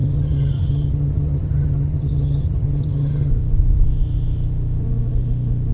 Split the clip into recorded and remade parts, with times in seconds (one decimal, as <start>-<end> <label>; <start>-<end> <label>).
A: 0.0-3.3 remade; 3.3-5.7 recorded